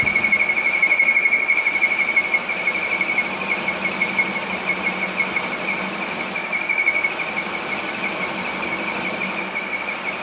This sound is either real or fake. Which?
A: real